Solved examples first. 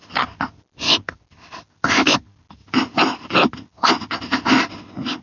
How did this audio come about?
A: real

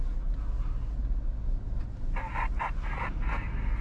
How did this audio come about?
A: real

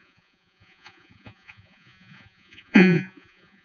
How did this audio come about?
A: fake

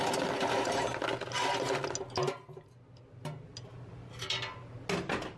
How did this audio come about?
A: real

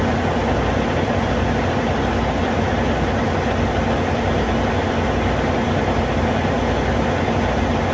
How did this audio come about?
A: real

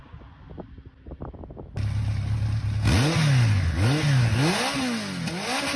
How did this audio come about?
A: real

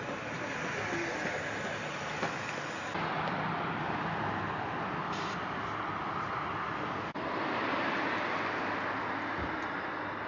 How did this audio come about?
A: real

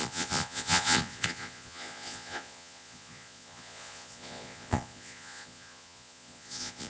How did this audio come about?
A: fake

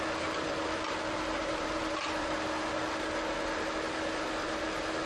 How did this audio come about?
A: fake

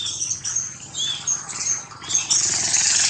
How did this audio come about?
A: real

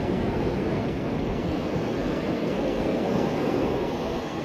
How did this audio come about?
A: fake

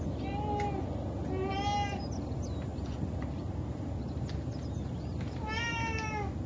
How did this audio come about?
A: real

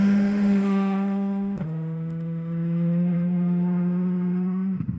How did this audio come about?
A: fake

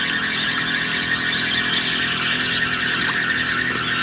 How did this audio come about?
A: real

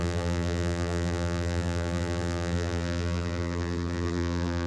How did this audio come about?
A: fake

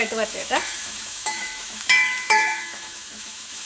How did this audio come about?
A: fake